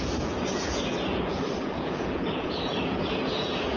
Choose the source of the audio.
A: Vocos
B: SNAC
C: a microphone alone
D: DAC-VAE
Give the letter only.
A